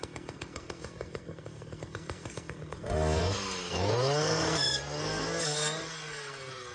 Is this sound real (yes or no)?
no